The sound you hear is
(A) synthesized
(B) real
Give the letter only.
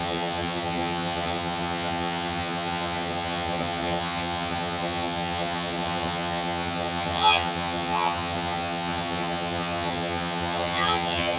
A